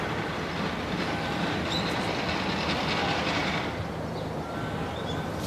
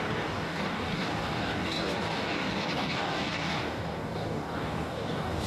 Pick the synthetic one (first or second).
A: second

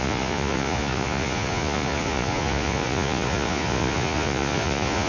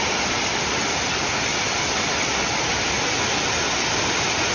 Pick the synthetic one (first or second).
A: first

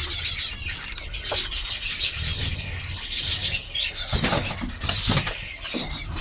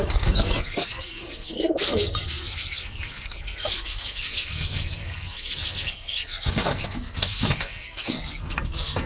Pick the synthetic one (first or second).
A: second